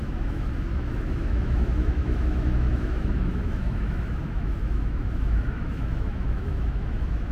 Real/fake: fake